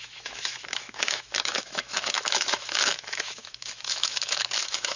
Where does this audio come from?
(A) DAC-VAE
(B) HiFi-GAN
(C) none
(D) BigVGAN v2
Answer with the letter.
A